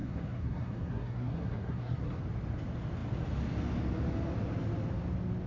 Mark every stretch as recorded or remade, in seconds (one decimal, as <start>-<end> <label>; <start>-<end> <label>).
0.0-2.2 remade; 2.2-5.5 recorded